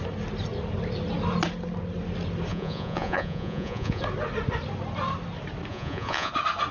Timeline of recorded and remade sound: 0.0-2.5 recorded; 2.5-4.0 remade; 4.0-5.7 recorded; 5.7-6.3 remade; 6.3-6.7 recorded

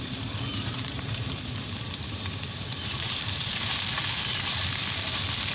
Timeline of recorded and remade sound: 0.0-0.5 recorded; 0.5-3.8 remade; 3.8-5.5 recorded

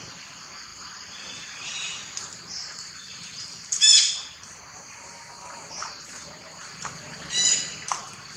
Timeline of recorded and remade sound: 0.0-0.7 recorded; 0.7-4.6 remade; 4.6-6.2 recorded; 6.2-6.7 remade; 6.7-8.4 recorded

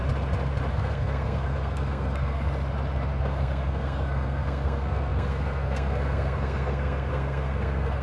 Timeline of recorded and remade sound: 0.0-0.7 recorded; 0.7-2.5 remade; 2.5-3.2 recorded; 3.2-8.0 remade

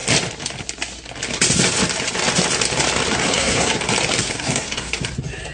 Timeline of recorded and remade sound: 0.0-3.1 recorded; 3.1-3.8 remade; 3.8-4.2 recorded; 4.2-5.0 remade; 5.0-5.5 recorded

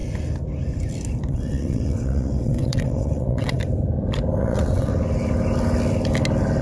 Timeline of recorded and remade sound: 0.0-1.3 recorded; 1.3-3.6 remade; 3.6-4.4 recorded; 4.4-4.9 remade; 4.9-6.6 recorded

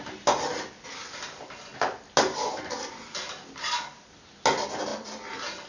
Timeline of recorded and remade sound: 0.0-5.7 recorded

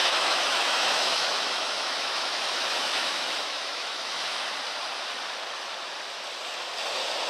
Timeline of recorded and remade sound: 0.0-4.4 remade; 4.4-7.3 recorded